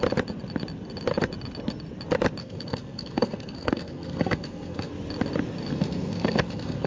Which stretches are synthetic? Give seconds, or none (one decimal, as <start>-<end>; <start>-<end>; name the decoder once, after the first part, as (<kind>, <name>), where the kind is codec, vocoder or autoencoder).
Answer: 2.4-4.9 (codec, SNAC); 5.7-6.9